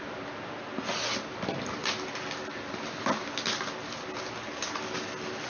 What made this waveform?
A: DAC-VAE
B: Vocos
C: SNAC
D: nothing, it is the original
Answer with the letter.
D